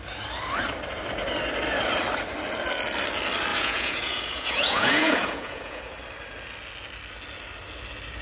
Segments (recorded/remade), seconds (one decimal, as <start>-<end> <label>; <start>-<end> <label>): 0.0-3.5 recorded; 3.5-5.8 remade; 5.8-8.2 recorded